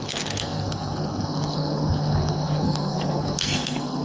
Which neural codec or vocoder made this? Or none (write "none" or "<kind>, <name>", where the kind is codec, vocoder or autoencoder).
codec, SNAC